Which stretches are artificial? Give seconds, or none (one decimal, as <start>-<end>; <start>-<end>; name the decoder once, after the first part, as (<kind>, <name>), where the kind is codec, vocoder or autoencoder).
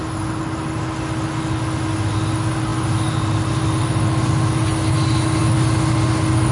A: none